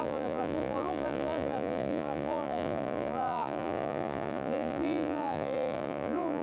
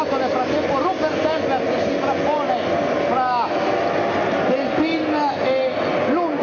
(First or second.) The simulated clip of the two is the first